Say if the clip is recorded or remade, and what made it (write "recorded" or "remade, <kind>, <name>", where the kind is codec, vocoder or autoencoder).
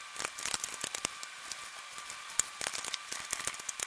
recorded